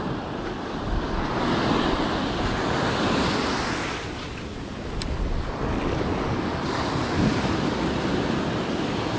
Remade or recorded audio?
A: recorded